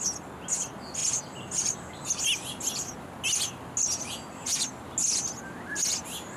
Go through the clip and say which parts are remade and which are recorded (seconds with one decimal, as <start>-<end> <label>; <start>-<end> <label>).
0.0-6.4 recorded